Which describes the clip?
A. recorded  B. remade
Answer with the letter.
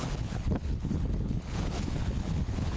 B